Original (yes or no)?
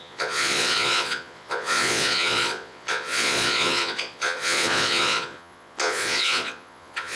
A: no